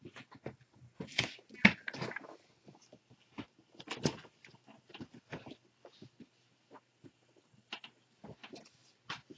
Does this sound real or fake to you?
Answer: real